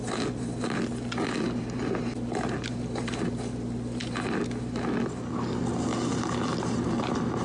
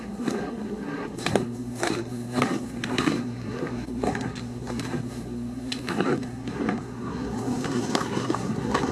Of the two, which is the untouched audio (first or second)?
first